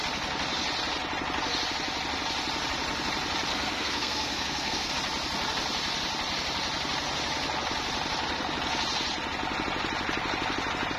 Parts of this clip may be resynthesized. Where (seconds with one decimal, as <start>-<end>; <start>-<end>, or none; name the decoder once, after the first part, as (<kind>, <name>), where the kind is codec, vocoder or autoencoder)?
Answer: 3.5-4.9 (codec, SNAC)